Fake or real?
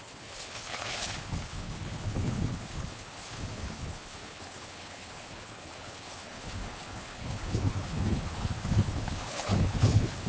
fake